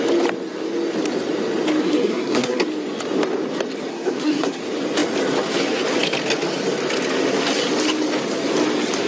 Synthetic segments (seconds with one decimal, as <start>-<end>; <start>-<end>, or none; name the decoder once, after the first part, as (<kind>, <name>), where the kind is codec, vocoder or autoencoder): 1.8-2.6 (codec, SNAC); 3.9-4.6